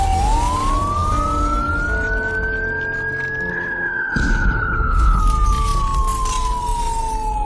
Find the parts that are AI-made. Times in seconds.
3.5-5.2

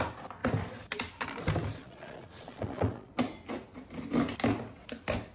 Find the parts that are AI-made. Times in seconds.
1.8-3.1

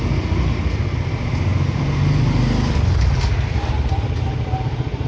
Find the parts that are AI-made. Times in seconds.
none

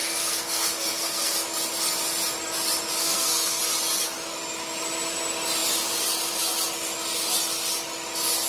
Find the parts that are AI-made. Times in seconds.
0.0-1.3; 3.0-3.6

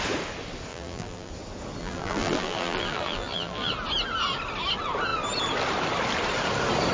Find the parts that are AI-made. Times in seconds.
0.7-1.3; 1.8-3.7

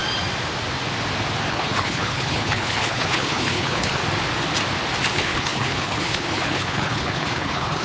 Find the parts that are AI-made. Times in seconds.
1.5-4.0; 5.1-7.8

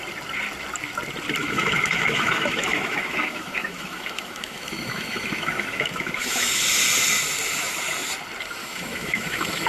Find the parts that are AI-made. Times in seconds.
1.4-6.6; 8.6-9.7

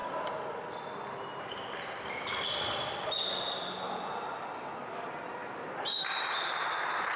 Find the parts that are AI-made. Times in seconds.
0.0-0.8; 1.3-3.3; 5.4-6.3